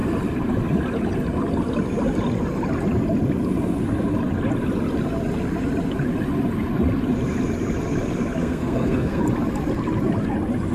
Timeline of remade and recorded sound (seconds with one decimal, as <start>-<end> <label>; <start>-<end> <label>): 0.0-8.4 recorded; 8.4-9.2 remade; 9.2-10.7 recorded